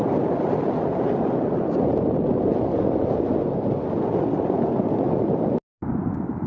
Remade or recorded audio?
recorded